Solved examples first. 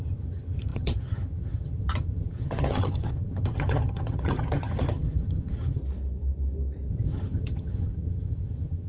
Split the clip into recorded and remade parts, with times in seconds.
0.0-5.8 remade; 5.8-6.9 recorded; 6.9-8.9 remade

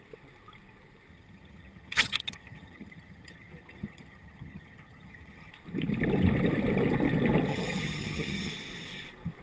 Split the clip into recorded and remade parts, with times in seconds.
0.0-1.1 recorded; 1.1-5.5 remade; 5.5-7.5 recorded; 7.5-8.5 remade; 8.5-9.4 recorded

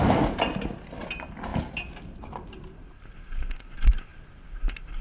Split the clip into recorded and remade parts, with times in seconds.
0.0-5.0 recorded

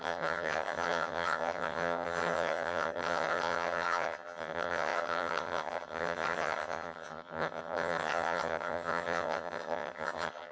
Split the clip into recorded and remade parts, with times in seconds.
0.0-10.5 remade